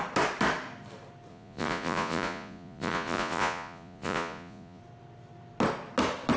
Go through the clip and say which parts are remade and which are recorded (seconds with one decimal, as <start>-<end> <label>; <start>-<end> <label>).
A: 0.0-1.3 recorded; 1.3-4.8 remade; 4.8-6.4 recorded